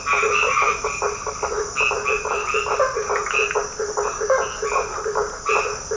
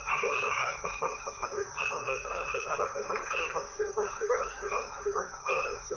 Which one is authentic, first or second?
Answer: first